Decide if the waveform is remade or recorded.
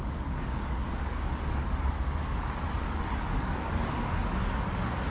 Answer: remade